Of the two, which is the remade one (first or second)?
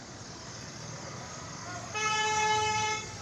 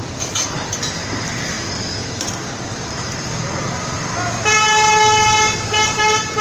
first